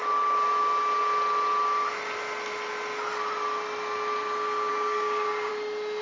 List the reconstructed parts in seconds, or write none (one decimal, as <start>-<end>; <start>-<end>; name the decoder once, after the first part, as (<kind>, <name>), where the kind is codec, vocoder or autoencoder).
4.7-5.5 (codec, DAC)